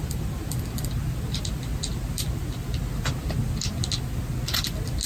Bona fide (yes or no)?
yes